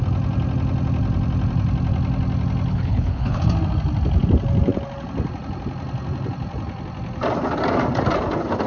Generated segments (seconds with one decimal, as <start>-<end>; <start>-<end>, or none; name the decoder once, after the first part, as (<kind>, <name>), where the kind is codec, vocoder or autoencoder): 2.7-3.4 (codec, HILCodec)